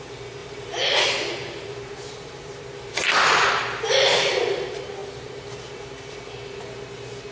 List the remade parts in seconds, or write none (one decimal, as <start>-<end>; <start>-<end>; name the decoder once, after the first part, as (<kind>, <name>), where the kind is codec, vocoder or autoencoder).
0.4-1.0 (vocoder, BigVGAN v2); 1.4-4.4